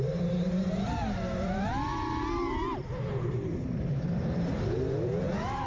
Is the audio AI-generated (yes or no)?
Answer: yes